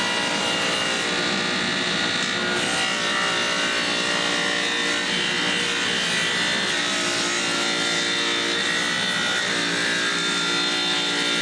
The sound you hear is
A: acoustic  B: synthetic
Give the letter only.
A